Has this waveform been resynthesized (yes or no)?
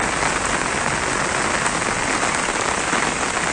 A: no